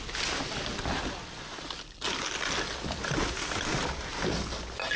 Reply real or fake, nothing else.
real